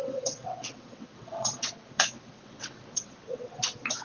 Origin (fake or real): fake